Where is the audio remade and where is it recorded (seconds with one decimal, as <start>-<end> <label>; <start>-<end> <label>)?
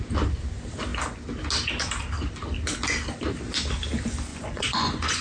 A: 0.0-4.3 recorded; 4.3-5.2 remade